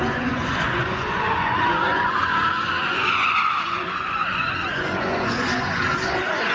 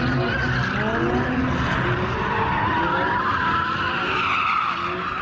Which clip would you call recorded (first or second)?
second